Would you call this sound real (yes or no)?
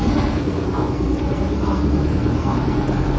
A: no